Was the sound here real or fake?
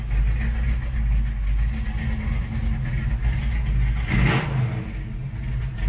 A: real